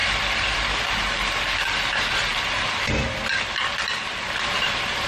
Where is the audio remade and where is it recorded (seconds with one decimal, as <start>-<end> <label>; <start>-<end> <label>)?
0.0-0.8 remade; 0.8-5.1 recorded